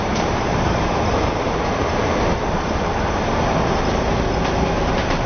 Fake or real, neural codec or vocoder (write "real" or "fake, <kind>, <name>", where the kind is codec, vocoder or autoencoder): fake, vocoder, BigVGAN v2